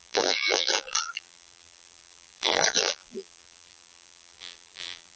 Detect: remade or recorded remade